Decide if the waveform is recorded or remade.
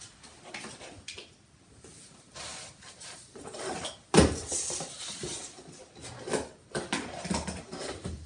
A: recorded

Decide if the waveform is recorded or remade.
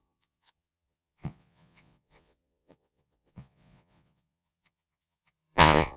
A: remade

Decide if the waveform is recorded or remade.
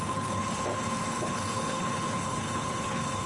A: remade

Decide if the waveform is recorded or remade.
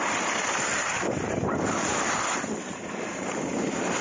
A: recorded